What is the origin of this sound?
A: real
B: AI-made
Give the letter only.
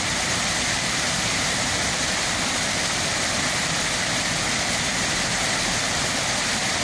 A